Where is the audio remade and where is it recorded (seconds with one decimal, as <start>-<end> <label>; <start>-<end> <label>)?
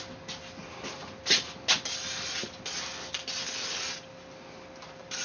0.0-5.2 recorded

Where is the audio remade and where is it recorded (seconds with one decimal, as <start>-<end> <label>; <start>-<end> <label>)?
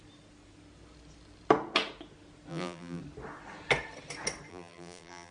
0.0-2.5 recorded; 2.5-3.0 remade; 3.0-4.5 recorded; 4.5-5.3 remade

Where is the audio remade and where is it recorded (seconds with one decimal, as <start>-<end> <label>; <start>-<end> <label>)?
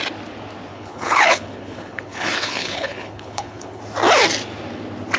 0.0-0.7 recorded; 0.7-3.8 remade; 3.8-5.2 recorded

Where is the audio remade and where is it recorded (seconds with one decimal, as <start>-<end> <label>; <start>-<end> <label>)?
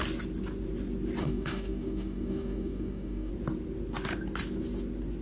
0.0-1.2 recorded; 1.2-3.3 remade; 3.3-5.2 recorded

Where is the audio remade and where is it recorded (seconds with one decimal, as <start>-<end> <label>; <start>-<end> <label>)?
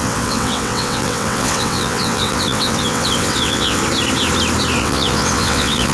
0.0-3.8 remade; 3.8-4.8 recorded; 4.8-5.9 remade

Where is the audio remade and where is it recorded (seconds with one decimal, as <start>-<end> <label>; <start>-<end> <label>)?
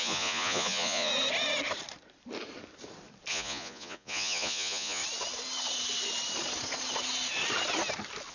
0.0-1.1 remade; 1.1-3.3 recorded; 3.3-5.0 remade; 5.0-8.3 recorded